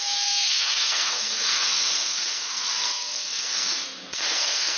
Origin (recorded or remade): remade